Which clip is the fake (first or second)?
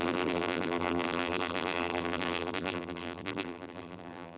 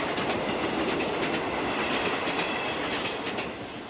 first